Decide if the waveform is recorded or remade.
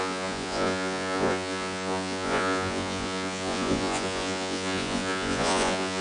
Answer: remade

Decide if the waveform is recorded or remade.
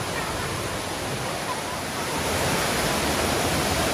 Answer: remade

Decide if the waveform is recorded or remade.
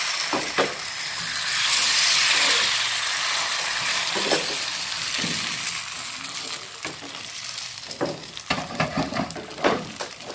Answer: recorded